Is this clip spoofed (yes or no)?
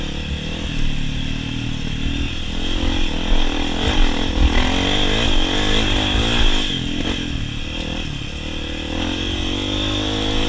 no